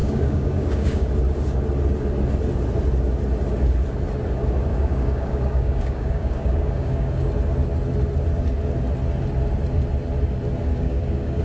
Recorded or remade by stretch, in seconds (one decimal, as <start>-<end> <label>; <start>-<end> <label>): 0.0-1.1 remade; 1.1-4.7 recorded; 4.7-7.3 remade; 7.3-10.7 recorded; 10.7-11.4 remade